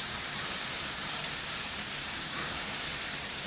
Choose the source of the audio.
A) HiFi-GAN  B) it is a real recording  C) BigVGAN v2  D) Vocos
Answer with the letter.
C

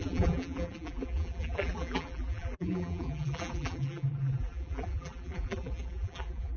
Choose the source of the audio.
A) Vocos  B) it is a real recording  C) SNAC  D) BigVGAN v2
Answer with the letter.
D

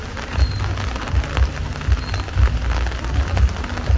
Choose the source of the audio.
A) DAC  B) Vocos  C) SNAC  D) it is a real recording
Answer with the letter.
D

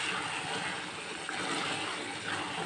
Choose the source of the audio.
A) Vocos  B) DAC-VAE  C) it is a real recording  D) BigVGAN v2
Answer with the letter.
C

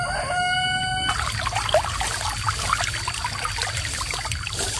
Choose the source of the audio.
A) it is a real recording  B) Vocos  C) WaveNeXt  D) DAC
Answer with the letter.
A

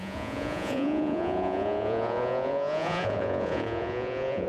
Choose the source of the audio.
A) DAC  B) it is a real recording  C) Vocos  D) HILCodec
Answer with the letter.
C